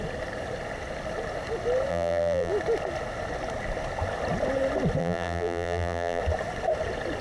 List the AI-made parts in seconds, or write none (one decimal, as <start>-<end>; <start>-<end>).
1.9-2.5; 5.0-6.2